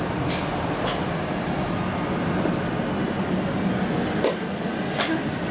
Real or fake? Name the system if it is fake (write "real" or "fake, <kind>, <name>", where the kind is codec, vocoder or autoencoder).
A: real